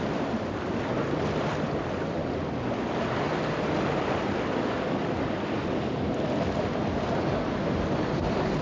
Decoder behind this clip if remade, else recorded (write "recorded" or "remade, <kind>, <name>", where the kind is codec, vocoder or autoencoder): recorded